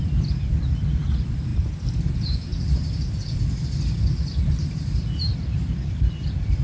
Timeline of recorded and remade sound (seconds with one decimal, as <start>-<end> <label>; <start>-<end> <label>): 0.0-1.5 remade; 1.5-2.1 recorded; 2.1-2.5 remade; 2.5-5.4 recorded; 5.4-6.6 remade